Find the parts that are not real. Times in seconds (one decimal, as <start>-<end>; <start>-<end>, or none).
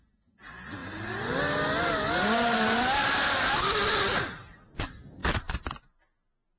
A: none